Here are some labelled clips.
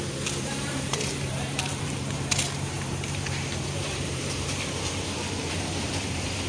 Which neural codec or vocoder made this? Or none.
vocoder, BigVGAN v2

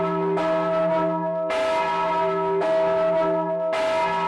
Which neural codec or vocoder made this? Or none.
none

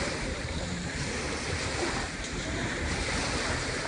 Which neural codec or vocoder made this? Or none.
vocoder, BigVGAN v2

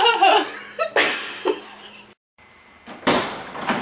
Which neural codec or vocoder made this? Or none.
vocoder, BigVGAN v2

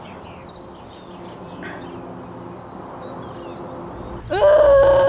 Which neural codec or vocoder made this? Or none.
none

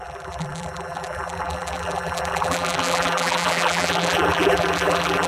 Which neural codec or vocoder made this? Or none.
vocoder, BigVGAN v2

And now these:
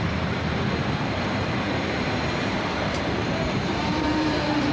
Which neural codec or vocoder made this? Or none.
vocoder, BigVGAN v2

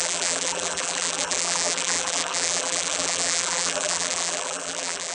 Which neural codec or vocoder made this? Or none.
vocoder, BigVGAN v2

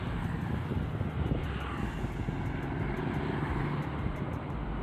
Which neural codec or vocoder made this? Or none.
none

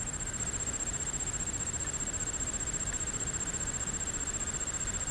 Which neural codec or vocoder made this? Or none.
none